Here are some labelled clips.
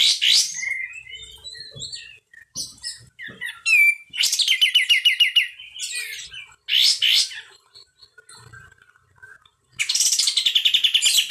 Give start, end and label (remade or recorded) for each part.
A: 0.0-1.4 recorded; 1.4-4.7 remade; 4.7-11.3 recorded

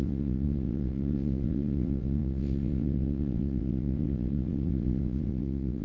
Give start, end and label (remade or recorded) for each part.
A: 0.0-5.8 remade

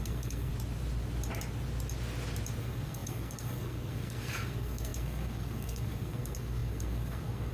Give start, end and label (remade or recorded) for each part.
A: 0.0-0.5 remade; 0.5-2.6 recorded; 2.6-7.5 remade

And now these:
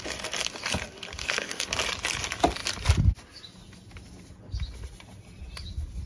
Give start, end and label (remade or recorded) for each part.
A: 0.0-1.2 recorded; 1.2-1.7 remade; 1.7-6.1 recorded

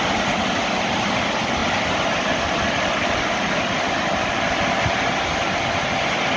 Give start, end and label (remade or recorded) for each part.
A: 0.0-6.4 recorded

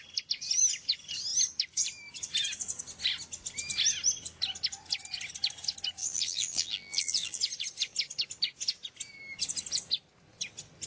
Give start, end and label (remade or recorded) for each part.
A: 0.0-6.0 recorded; 6.0-7.4 remade; 7.4-10.9 recorded

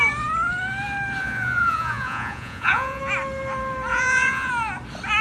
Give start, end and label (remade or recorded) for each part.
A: 0.0-1.2 recorded; 1.2-3.0 remade; 3.0-3.9 recorded; 3.9-4.5 remade; 4.5-5.2 recorded

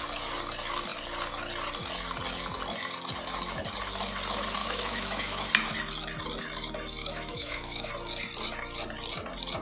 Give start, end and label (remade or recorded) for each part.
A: 0.0-4.6 recorded; 4.6-5.5 remade; 5.5-7.0 recorded; 7.0-7.9 remade; 7.9-9.6 recorded